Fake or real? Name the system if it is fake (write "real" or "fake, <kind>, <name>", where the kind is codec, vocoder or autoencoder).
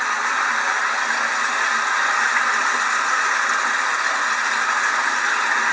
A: real